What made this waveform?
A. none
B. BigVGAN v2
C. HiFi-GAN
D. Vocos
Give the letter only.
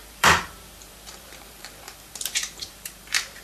B